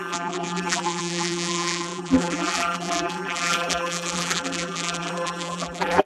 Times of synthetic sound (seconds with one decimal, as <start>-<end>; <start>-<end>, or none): 0.0-6.1